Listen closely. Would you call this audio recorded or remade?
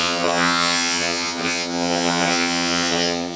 remade